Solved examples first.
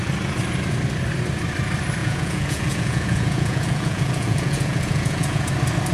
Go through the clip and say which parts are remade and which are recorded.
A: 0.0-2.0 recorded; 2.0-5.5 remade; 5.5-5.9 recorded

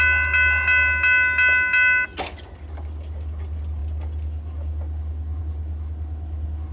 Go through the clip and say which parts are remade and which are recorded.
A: 0.0-6.7 recorded

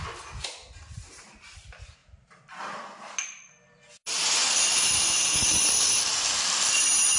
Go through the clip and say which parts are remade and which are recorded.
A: 0.0-7.2 recorded

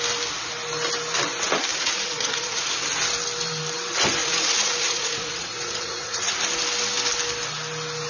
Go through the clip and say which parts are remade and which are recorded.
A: 0.0-1.7 recorded; 1.7-2.7 remade; 2.7-4.2 recorded; 4.2-6.4 remade; 6.4-8.1 recorded